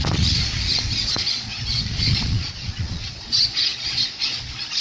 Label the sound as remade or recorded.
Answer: remade